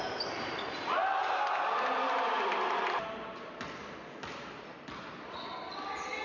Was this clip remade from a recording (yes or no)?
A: no